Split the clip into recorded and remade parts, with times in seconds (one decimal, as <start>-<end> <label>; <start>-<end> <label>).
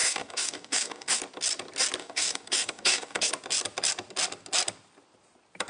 0.0-1.2 remade; 1.2-2.0 recorded; 2.0-3.3 remade; 3.3-5.7 recorded